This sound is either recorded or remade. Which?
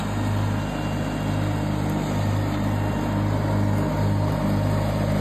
recorded